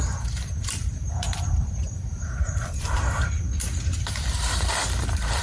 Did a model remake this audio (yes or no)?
yes